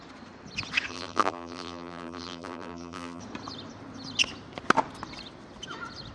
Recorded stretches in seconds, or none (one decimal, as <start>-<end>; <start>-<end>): 0.0-0.9; 3.2-6.1